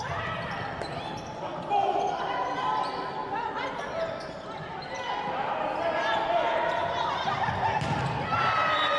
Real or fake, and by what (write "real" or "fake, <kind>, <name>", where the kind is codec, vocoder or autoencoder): real